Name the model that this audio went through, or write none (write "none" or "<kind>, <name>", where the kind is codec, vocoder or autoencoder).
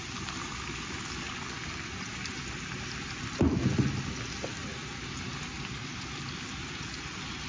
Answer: none